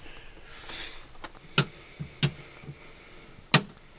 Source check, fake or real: real